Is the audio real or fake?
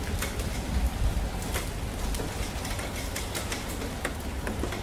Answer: real